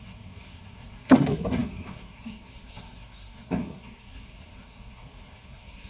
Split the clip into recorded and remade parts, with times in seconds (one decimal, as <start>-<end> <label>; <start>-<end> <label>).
0.0-5.9 remade